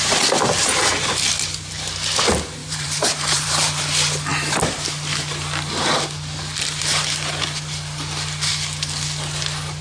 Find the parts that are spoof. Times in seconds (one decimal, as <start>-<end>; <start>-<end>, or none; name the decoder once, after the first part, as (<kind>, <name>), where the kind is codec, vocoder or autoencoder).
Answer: 2.6-3.7 (vocoder, BigVGAN v2)

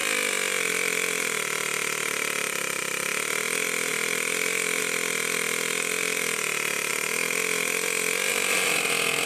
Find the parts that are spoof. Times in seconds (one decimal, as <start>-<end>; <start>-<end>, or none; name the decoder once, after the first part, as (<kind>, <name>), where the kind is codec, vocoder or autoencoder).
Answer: none